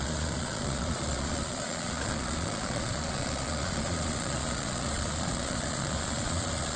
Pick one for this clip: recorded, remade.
remade